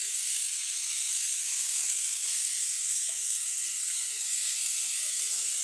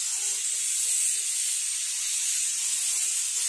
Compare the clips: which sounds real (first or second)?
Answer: second